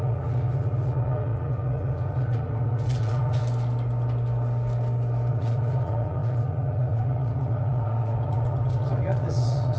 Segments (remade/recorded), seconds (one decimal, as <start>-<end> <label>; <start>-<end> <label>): 0.0-3.4 remade; 3.4-5.3 recorded; 5.3-9.8 remade